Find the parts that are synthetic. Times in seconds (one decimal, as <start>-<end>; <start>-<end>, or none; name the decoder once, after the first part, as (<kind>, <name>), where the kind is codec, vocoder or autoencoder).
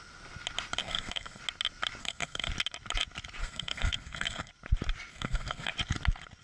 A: 0.8-1.4 (codec, SNAC); 2.0-2.5; 3.4-4.5; 5.1-5.7